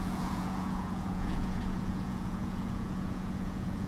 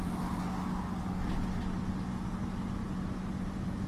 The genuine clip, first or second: second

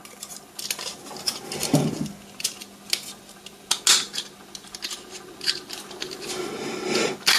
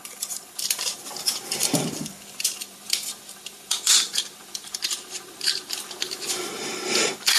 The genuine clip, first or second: first